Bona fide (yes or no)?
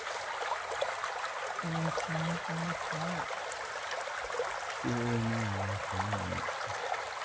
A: yes